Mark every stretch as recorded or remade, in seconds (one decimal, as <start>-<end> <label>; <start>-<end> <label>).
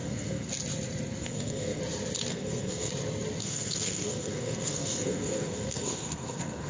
0.0-0.5 remade; 0.5-1.2 recorded; 1.2-1.8 remade; 1.8-2.3 recorded; 2.3-2.9 remade; 2.9-3.4 recorded; 3.4-6.7 remade